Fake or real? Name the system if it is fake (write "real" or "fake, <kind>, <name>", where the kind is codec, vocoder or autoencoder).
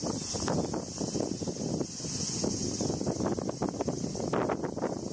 real